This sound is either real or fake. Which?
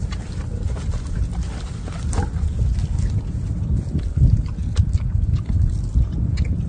real